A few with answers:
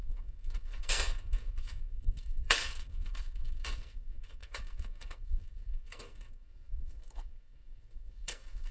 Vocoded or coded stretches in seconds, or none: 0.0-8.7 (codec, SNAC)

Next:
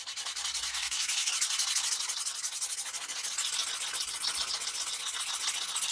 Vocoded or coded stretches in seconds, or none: 0.7-1.3 (codec, SNAC)

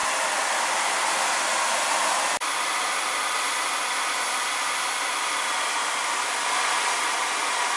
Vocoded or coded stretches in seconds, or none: none

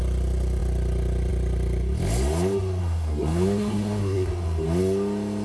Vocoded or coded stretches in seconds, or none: 2.8-4.3 (codec, SNAC)

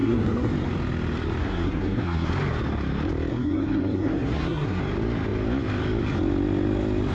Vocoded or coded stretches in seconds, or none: 0.0-0.5 (codec, SNAC); 1.4-2.3; 3.3-4.8

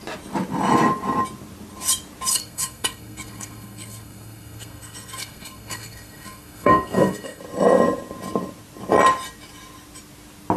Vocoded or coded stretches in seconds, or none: 2.3-7.4 (codec, SNAC)

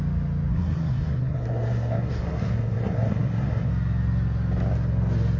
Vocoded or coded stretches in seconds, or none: 0.5-3.7 (codec, SNAC)